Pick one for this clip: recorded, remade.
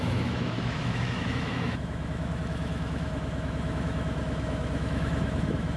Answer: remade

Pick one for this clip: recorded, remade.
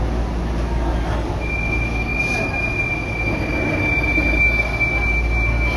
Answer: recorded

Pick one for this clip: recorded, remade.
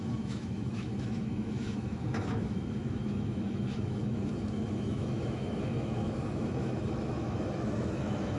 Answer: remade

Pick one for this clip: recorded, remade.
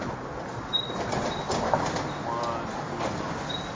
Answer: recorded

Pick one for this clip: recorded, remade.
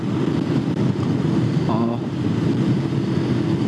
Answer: recorded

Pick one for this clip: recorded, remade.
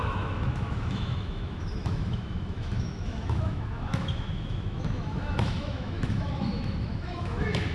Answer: remade